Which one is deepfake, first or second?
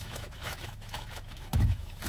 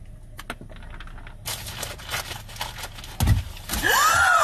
first